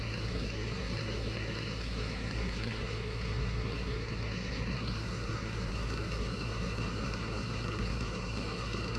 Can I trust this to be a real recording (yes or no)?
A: no